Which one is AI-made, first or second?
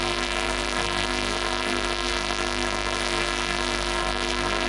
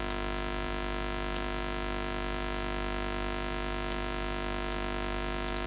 first